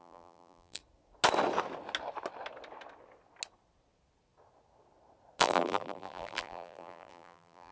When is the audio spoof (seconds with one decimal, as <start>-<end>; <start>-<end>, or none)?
0.0-0.8; 5.4-7.7